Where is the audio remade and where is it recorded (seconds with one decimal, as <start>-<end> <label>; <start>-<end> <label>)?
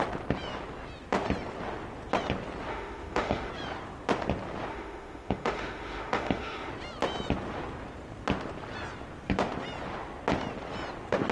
0.0-2.7 recorded; 2.7-3.5 remade; 3.5-4.7 recorded; 4.7-6.7 remade; 6.7-11.3 recorded